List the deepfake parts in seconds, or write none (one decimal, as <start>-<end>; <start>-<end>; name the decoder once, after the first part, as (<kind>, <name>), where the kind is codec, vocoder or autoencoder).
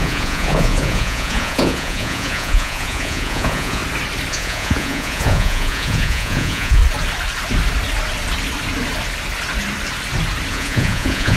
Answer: 0.0-3.8 (vocoder, Vocos); 4.3-6.8; 10.5-11.4